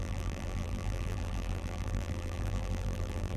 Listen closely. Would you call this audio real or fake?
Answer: fake